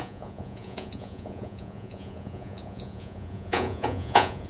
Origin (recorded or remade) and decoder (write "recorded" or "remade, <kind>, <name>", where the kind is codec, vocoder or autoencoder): remade, vocoder, Vocos